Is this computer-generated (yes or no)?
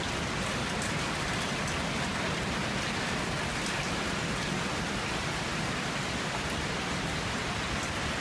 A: no